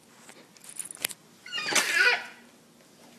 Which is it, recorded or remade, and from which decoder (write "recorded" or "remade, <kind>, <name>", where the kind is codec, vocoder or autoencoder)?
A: recorded